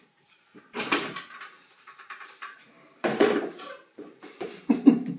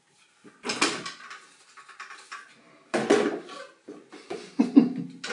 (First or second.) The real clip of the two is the second